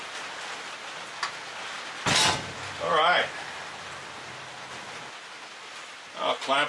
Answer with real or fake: real